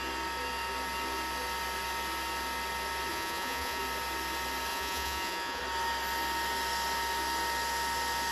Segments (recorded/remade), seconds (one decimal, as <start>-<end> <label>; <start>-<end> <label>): 0.0-3.1 recorded; 3.1-3.8 remade; 3.8-4.7 recorded; 4.7-5.6 remade; 5.6-8.3 recorded